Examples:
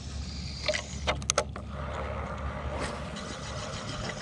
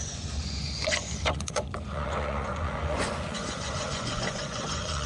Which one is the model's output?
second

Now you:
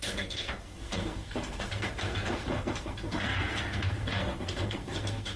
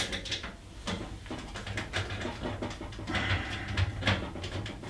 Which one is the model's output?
first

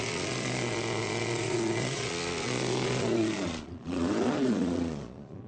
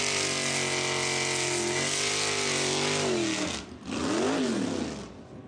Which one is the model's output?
first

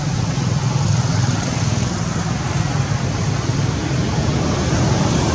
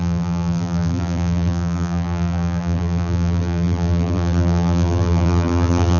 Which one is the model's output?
second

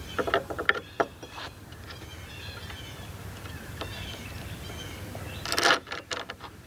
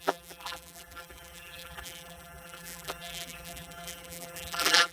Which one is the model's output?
second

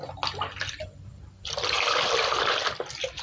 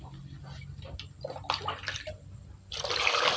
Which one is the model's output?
second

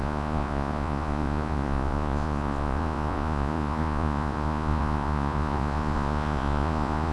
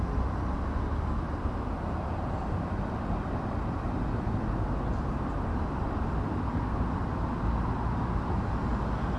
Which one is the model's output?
first